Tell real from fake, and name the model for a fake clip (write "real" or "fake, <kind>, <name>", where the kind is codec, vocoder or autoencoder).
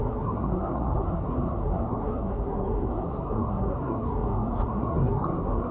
fake, codec, SNAC